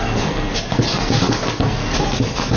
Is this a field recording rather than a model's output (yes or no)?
no